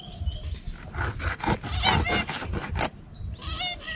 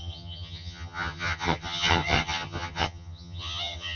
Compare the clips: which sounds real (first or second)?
first